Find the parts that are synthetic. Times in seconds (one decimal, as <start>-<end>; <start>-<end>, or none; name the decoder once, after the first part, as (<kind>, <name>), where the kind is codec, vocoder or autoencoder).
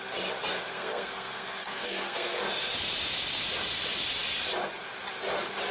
0.7-2.4 (codec, SNAC)